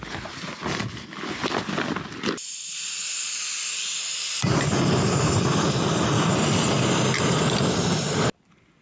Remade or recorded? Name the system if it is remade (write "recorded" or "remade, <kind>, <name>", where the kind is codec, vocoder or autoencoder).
recorded